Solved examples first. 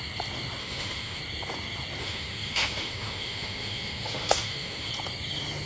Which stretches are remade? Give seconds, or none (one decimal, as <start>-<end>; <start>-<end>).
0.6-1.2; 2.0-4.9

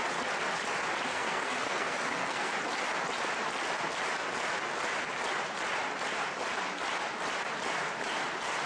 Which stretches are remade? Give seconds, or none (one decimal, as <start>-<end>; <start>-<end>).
1.1-2.5

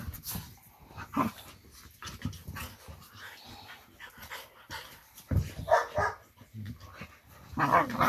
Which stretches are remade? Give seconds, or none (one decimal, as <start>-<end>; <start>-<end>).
none